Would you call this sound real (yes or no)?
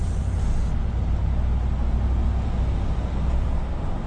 yes